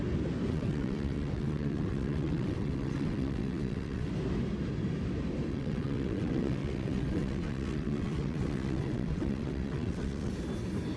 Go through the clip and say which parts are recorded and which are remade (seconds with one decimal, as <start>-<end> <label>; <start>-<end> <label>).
0.0-0.5 recorded; 0.5-4.1 remade; 4.1-5.5 recorded; 5.5-10.3 remade; 10.3-11.0 recorded